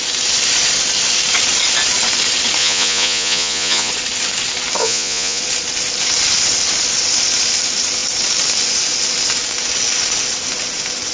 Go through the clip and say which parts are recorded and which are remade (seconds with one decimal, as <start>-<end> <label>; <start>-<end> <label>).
0.0-2.6 recorded; 2.6-3.9 remade; 3.9-4.8 recorded; 4.8-5.4 remade; 5.4-11.1 recorded